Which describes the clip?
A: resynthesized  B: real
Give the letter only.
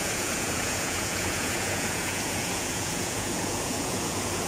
A